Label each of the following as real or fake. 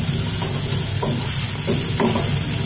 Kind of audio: real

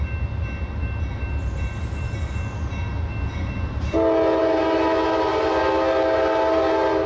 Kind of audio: real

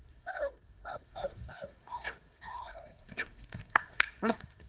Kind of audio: fake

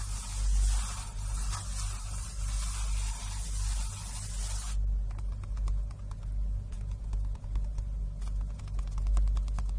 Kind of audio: real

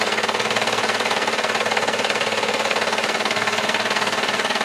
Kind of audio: fake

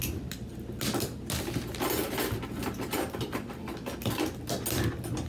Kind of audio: real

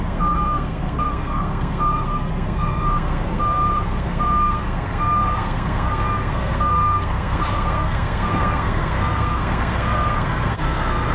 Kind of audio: fake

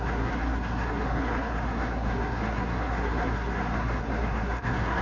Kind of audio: fake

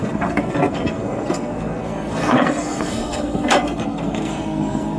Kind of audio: fake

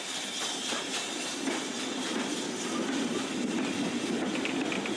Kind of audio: real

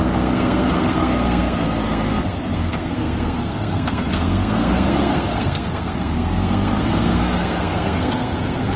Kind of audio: fake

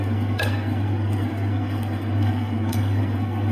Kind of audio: fake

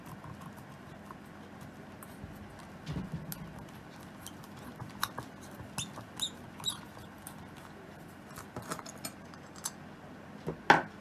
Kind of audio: real